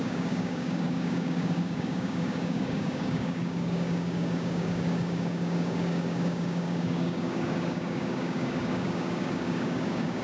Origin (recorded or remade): remade